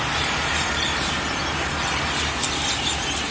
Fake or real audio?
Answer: real